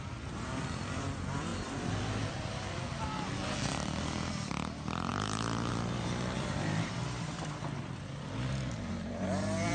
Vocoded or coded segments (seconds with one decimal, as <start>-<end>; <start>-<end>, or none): 0.0-1.5; 2.2-5.1; 5.7-9.7